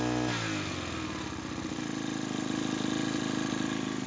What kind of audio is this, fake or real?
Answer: real